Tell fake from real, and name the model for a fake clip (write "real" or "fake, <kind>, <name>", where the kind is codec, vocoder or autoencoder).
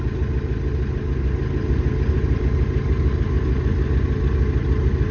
real